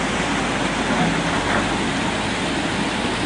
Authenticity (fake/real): real